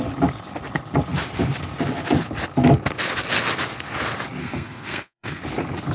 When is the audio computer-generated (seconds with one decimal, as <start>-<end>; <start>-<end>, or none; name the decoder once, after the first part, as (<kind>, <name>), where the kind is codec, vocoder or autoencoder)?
4.4-5.4 (codec, SNAC)